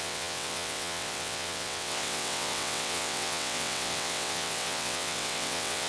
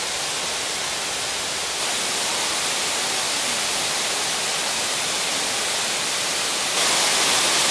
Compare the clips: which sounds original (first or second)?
second